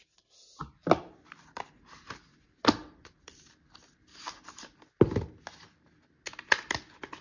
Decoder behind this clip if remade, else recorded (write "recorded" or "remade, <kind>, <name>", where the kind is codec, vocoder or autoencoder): recorded